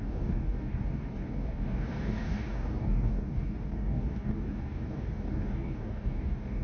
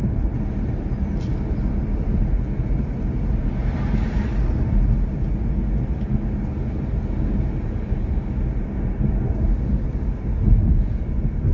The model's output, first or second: first